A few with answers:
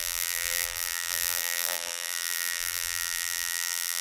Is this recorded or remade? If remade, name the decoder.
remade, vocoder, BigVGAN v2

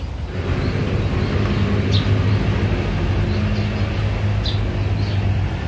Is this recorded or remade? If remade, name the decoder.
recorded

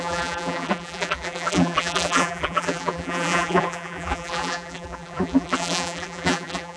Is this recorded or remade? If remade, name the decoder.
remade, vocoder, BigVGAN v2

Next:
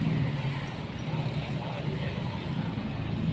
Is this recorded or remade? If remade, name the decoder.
recorded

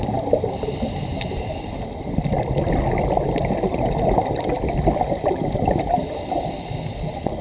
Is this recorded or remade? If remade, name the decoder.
remade, vocoder, BigVGAN v2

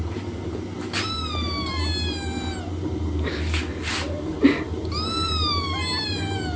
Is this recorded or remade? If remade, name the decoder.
recorded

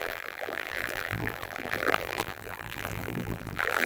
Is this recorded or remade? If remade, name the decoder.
remade, vocoder, BigVGAN v2